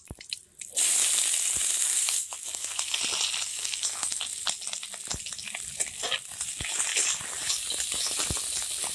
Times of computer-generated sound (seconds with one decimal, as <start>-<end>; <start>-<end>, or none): 1.7-3.0; 3.5-4.2